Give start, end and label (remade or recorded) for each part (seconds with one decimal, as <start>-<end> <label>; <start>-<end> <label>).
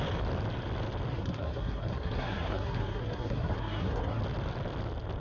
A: 0.0-1.1 recorded; 1.1-4.2 remade; 4.2-5.2 recorded